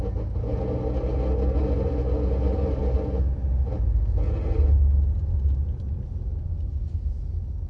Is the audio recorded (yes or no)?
yes